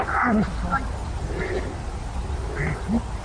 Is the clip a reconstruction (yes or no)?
no